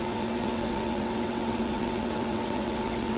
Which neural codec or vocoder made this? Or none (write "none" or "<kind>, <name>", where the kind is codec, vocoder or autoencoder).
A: vocoder, WaveNeXt